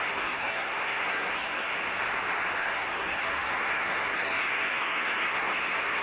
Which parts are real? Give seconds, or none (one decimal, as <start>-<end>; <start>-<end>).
1.7-2.6